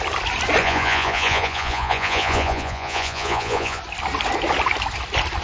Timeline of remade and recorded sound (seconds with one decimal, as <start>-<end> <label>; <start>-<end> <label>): 0.0-0.6 recorded; 0.6-3.8 remade; 3.8-5.4 recorded